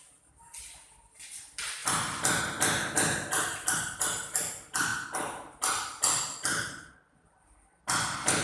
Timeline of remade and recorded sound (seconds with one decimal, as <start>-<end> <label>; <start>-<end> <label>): 0.0-8.4 recorded